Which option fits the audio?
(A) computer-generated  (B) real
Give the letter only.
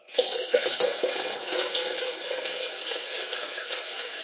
A